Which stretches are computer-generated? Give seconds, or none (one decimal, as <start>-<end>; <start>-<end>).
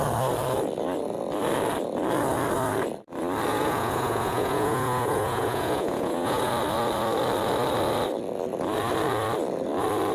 3.5-6.5